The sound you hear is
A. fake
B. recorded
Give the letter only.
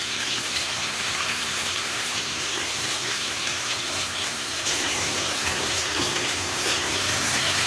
A